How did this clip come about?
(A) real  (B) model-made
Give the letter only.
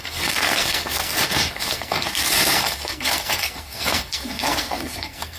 B